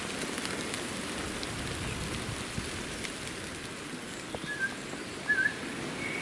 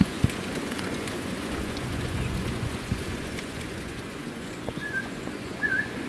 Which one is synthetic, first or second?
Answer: second